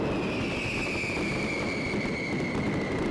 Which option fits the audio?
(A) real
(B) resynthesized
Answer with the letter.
A